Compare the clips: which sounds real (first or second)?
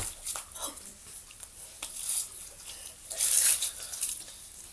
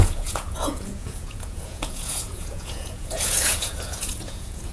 first